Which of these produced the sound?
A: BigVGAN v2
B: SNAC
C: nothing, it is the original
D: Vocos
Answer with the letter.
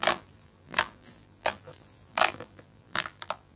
A